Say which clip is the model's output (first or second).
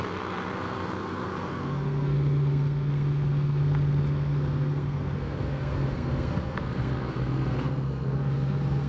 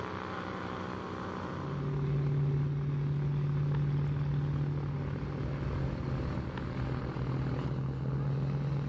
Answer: first